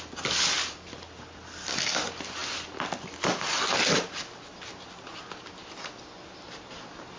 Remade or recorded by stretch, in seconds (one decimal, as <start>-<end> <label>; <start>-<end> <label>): 0.0-7.2 recorded